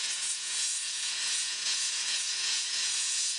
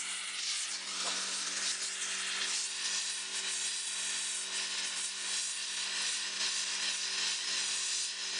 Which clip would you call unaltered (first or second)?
second